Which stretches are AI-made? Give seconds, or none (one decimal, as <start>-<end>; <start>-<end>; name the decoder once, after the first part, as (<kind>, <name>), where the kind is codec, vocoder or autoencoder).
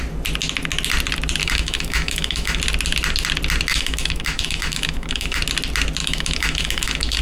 1.4-2.6 (autoencoder, DAC-VAE); 3.7-5.4; 6.0-7.2